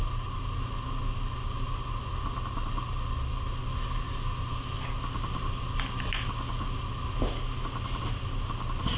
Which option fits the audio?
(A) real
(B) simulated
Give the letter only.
A